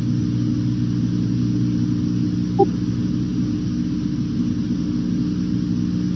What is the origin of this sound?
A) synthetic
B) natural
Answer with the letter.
B